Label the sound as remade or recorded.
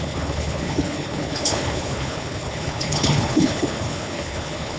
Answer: remade